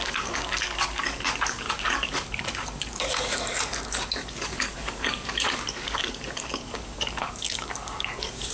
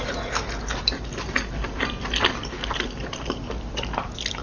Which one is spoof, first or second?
first